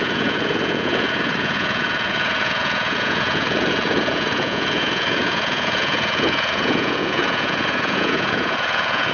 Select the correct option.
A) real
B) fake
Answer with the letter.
B